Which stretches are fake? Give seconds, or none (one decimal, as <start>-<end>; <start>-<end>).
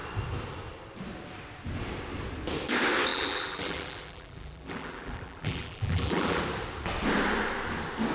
3.1-6.4